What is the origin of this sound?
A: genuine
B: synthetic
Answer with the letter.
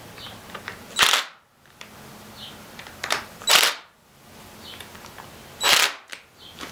A